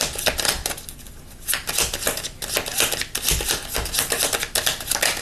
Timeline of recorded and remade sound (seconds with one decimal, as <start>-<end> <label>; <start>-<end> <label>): 0.0-5.2 recorded